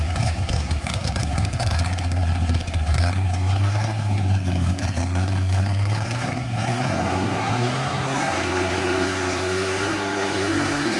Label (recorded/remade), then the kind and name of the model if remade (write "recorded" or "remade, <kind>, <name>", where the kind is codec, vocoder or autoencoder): remade, codec, SNAC